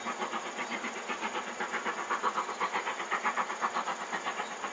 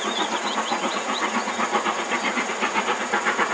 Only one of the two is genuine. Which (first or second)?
first